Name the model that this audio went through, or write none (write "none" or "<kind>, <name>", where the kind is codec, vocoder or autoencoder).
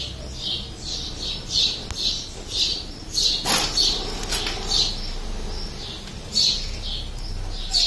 none